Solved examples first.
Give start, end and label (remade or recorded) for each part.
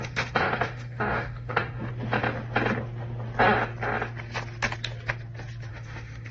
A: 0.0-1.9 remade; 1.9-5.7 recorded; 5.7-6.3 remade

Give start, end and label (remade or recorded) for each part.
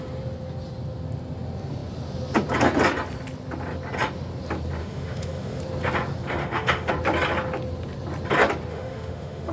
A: 0.0-4.8 recorded; 4.8-5.6 remade; 5.6-6.4 recorded; 6.4-6.9 remade; 6.9-8.7 recorded; 8.7-9.5 remade